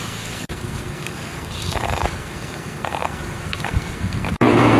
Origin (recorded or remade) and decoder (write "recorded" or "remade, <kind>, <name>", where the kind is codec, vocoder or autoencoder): remade, codec, SNAC